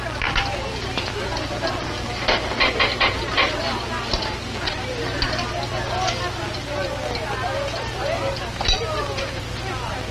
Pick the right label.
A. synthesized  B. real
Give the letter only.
B